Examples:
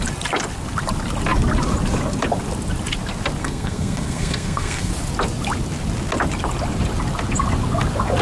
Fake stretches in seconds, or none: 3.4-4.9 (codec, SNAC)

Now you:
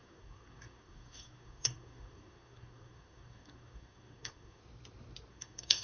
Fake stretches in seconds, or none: 0.0-4.6 (codec, SNAC); 5.3-5.8

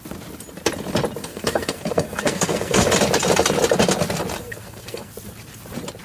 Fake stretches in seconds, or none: 1.2-2.9 (codec, SNAC); 4.4-5.1